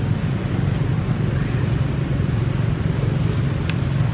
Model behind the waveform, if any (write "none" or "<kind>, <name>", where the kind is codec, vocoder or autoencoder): none